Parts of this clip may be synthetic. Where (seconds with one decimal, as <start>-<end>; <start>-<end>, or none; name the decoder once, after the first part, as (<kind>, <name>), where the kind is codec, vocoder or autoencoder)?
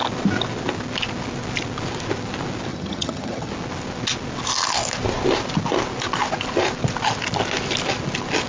2.7-3.5 (vocoder, HiFi-GAN)